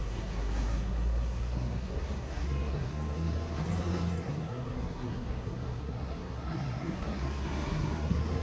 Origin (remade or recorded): remade